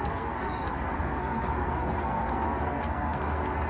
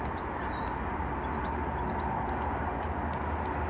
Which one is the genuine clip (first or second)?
second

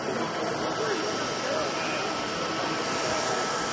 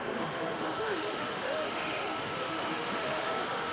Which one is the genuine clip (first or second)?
first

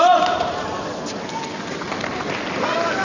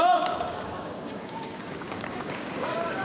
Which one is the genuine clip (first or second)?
first